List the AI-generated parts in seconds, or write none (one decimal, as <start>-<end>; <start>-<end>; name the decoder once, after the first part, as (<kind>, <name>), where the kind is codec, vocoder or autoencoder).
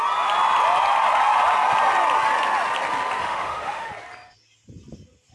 3.2-3.9 (autoencoder, DAC-VAE)